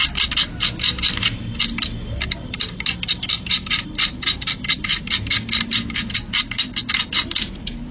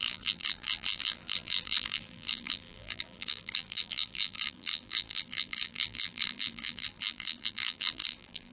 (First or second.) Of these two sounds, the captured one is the first